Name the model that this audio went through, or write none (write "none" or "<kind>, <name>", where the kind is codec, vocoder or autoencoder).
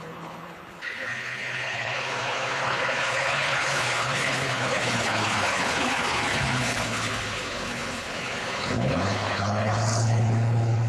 codec, HILCodec